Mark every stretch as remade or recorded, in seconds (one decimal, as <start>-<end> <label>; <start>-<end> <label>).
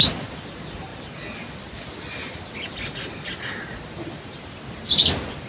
0.0-5.5 recorded